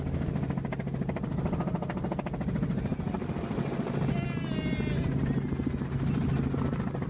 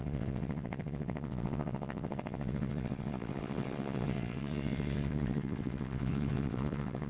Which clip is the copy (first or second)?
second